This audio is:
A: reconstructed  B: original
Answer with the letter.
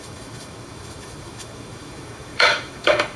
A